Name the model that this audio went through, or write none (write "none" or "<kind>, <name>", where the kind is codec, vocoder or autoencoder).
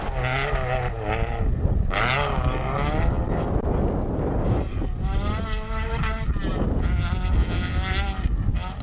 none